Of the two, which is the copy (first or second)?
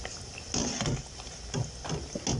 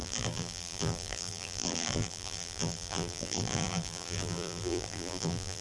second